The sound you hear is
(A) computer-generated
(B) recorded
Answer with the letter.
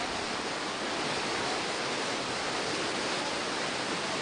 B